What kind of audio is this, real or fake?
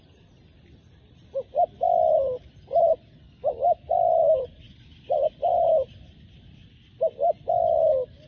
real